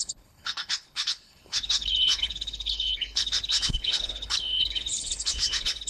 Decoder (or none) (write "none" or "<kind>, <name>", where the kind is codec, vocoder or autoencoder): codec, HILCodec